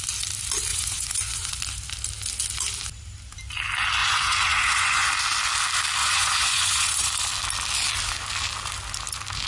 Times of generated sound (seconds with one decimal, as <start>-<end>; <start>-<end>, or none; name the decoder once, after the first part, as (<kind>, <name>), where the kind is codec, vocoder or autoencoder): 0.7-1.6 (vocoder, Vocos); 4.0-5.1; 6.0-7.1

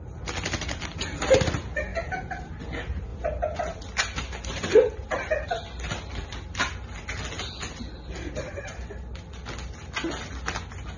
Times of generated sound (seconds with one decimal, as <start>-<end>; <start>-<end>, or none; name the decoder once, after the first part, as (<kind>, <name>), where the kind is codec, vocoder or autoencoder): none

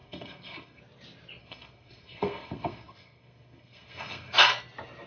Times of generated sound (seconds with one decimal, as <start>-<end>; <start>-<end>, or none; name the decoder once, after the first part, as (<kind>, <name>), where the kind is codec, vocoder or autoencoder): 0.0-0.8 (codec, SNAC); 1.4-4.5

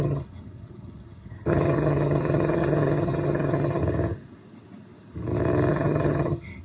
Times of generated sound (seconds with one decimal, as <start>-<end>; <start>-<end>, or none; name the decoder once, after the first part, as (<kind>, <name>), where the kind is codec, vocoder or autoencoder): 0.0-3.8 (vocoder, HiFi-GAN); 5.7-6.6

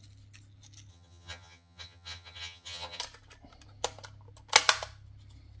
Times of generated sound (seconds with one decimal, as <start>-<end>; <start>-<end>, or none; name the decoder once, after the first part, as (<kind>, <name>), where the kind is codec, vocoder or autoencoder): 0.9-3.0 (vocoder, HiFi-GAN)

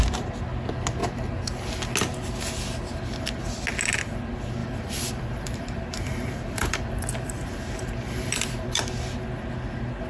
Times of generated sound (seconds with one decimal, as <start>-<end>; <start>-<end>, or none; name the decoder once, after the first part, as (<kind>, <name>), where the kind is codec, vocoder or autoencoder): 4.6-8.8 (vocoder, BigVGAN v2)